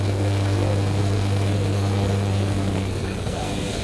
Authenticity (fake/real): fake